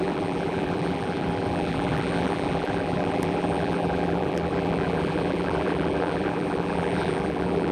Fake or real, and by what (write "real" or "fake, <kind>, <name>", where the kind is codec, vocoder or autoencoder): fake, vocoder, BigVGAN v2